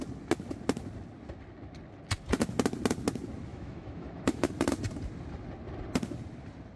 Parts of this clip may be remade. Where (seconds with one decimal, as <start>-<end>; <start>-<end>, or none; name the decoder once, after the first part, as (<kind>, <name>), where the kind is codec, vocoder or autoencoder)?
3.5-4.5 (autoencoder, DAC-VAE)